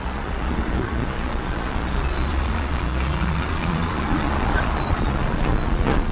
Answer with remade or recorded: remade